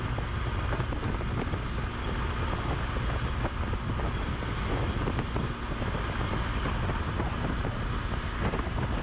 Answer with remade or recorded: recorded